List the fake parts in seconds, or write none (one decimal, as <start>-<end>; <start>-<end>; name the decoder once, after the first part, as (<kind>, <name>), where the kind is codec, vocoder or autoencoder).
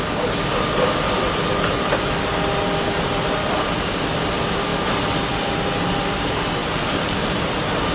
none